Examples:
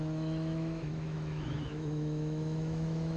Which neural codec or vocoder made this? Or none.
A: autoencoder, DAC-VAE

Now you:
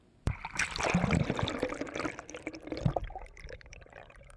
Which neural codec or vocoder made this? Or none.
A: vocoder, BigVGAN v2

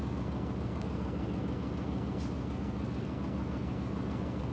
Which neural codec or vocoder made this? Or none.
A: codec, SNAC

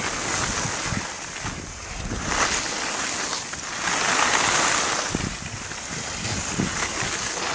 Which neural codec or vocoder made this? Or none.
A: none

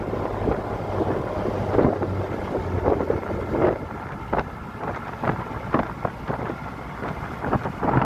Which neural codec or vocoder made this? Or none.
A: none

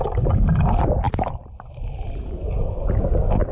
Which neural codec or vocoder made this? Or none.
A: none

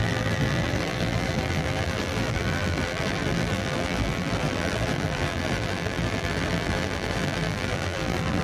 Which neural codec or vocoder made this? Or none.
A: vocoder, BigVGAN v2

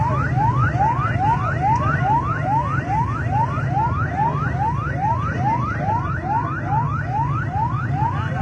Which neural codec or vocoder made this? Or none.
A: none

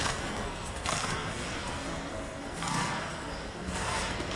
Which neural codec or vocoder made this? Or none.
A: codec, SNAC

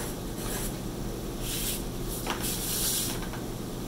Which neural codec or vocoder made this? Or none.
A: none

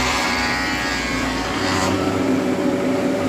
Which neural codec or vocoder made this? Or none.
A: vocoder, BigVGAN v2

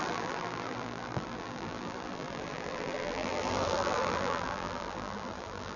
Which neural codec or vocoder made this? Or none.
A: vocoder, BigVGAN v2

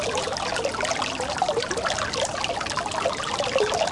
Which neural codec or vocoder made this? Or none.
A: none